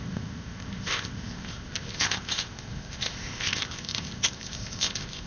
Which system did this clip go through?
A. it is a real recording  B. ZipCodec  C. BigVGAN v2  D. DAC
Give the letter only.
B